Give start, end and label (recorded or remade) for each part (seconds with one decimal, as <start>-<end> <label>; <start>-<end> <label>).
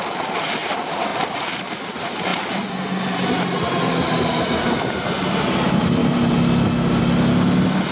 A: 0.0-7.9 recorded